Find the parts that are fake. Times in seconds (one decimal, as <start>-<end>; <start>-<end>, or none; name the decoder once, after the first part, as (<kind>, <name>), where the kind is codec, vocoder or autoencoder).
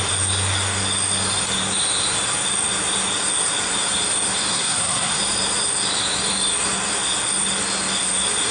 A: 4.5-5.2 (codec, SNAC)